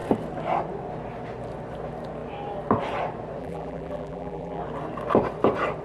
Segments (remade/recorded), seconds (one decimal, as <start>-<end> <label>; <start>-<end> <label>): 0.0-3.4 recorded; 3.4-4.6 remade; 4.6-5.8 recorded